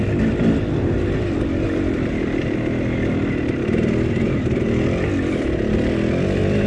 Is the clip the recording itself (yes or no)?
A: yes